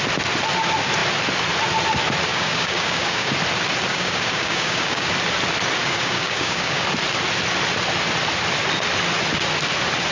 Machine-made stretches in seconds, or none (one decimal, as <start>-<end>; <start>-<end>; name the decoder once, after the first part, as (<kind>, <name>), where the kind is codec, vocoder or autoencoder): 2.3-3.3 (codec, DAC); 3.9-5.1; 5.8-6.8